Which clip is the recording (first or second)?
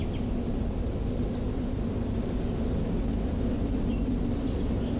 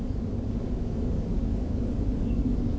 first